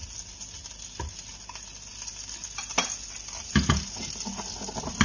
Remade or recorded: recorded